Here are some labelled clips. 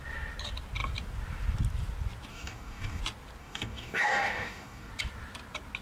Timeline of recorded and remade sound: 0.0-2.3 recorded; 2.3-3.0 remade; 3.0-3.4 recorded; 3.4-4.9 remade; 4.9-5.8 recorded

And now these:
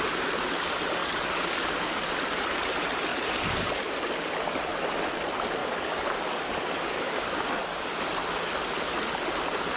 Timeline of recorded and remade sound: 0.0-1.0 recorded; 1.0-1.7 remade; 1.7-3.1 recorded; 3.1-3.9 remade; 3.9-5.6 recorded; 5.6-8.0 remade; 8.0-9.8 recorded

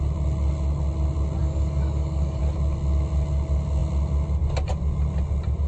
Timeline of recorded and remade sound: 0.0-1.4 recorded; 1.4-2.4 remade; 2.4-5.7 recorded

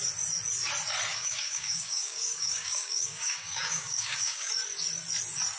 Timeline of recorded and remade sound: 0.0-1.1 recorded; 1.1-4.5 remade; 4.5-5.6 recorded

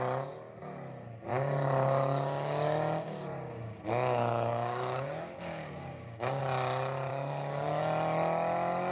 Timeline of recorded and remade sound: 0.0-1.3 recorded; 1.3-6.4 remade; 6.4-7.1 recorded; 7.1-7.8 remade; 7.8-8.9 recorded

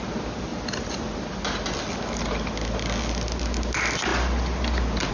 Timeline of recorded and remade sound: 0.0-5.1 recorded